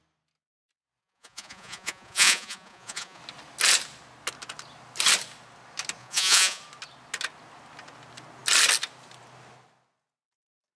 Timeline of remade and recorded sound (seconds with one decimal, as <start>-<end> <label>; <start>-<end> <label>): 0.0-1.0 recorded; 1.0-3.2 remade; 3.2-6.0 recorded; 6.0-6.6 remade; 6.6-10.8 recorded